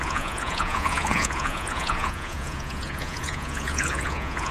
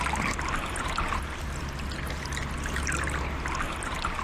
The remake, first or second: first